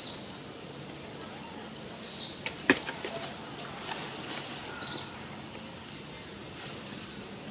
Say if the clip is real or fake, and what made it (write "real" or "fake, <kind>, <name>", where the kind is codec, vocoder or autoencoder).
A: real